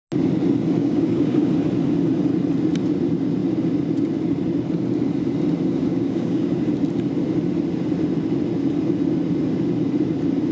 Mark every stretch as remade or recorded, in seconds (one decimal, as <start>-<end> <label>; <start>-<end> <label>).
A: 0.0-0.8 recorded; 0.8-1.5 remade; 1.5-5.9 recorded; 5.9-6.5 remade; 6.5-10.5 recorded